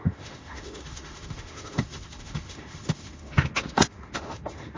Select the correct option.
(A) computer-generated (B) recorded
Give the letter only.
A